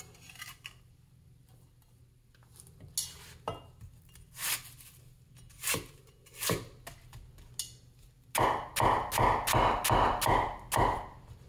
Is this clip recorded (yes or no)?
yes